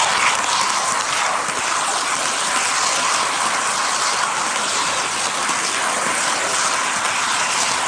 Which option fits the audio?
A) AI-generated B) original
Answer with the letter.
B